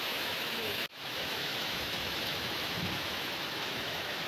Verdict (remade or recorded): remade